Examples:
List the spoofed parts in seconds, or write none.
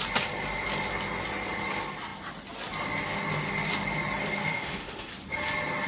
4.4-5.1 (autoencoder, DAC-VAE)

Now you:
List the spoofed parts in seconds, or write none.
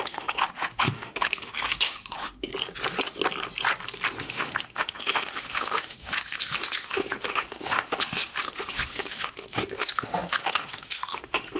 0.0-2.5 (autoencoder, DAC-VAE); 4.2-11.6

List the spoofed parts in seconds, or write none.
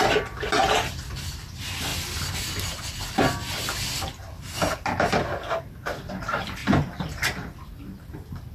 none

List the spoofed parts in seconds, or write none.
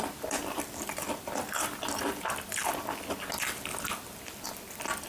none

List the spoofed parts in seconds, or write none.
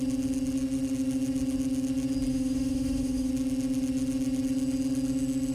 2.3-3.3 (autoencoder, DAC-VAE)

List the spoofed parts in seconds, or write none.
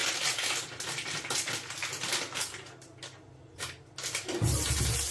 none